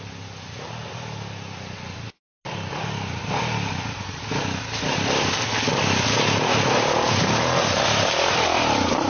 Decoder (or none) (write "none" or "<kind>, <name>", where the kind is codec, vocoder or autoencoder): none